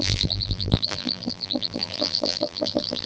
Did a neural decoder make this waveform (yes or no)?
yes